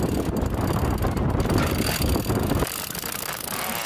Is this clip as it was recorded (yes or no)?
yes